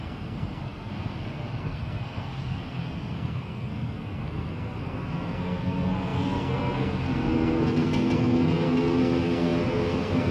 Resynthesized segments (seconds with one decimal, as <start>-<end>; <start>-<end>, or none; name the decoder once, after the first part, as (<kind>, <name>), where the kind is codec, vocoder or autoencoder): 0.0-10.3 (codec, SNAC)